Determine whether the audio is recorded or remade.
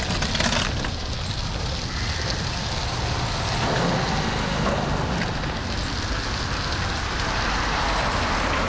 recorded